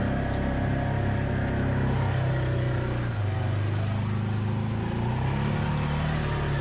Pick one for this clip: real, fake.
real